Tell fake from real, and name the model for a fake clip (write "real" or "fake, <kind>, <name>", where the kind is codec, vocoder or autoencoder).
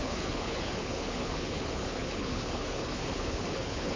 fake, codec, HILCodec